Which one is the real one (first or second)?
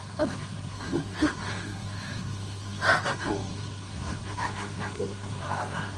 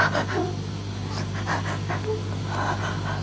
second